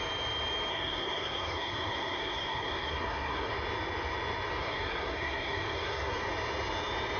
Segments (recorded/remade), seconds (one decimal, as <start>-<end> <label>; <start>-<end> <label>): 0.0-0.7 recorded; 0.7-3.5 remade; 3.5-4.6 recorded; 4.6-6.2 remade; 6.2-7.2 recorded